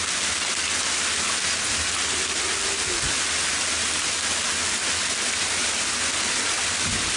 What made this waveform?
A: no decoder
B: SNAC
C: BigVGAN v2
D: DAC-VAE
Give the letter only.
A